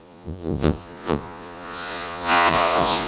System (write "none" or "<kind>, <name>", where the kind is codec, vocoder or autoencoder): vocoder, Vocos